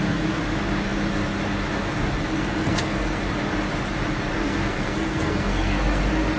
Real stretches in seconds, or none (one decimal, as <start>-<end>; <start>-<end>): 0.0-2.3; 3.2-4.3; 6.0-6.4